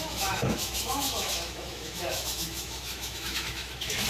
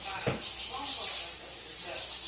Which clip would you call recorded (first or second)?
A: second